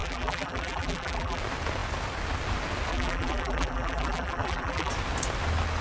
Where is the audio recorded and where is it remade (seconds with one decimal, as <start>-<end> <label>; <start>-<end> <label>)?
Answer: 0.0-1.4 remade; 1.4-2.9 recorded; 2.9-4.9 remade; 4.9-5.8 recorded